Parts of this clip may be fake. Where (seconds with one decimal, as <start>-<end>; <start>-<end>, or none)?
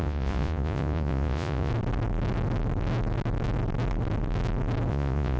0.0-1.7; 4.9-5.4